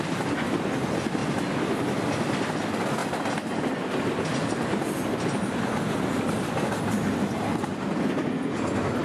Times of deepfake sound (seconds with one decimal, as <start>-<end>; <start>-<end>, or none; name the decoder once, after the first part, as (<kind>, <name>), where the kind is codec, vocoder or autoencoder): none